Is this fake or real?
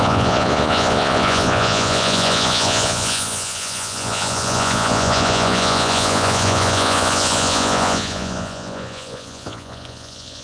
fake